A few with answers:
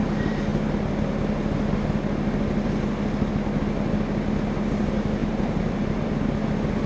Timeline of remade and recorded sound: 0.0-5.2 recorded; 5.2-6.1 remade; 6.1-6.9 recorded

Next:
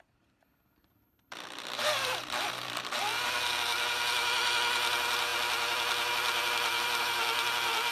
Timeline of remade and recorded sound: 0.0-7.9 remade

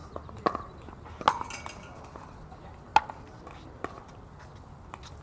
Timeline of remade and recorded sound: 0.0-5.2 recorded

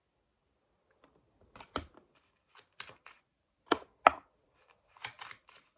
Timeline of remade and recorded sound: 0.0-5.8 recorded

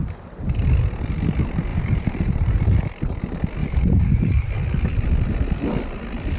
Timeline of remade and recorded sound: 0.0-1.7 recorded; 1.7-2.8 remade; 2.8-3.6 recorded; 3.6-4.5 remade; 4.5-6.4 recorded

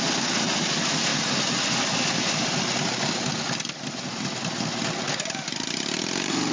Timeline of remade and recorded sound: 0.0-6.5 recorded

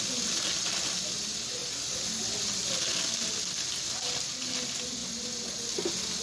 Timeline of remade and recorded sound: 0.0-3.7 recorded; 3.7-4.3 remade; 4.3-6.2 recorded